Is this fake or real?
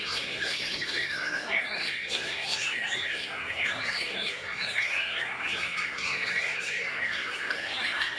fake